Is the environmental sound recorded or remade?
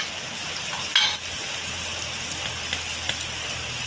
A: recorded